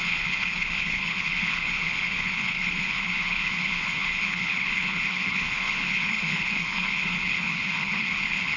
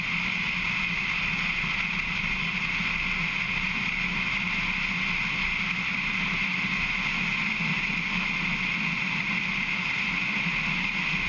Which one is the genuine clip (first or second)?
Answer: second